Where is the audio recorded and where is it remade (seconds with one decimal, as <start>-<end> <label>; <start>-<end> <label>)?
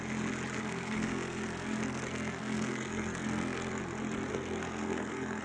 0.0-0.6 recorded; 0.6-3.8 remade; 3.8-4.3 recorded; 4.3-5.4 remade